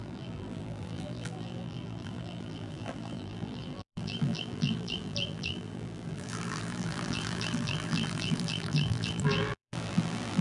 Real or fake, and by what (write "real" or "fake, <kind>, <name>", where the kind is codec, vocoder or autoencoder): fake, vocoder, BigVGAN v2